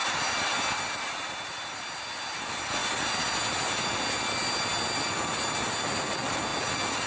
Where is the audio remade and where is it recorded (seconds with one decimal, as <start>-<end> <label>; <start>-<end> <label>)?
0.0-7.1 recorded